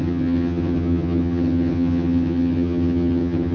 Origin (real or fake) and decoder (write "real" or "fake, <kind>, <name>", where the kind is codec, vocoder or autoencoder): fake, vocoder, HiFi-GAN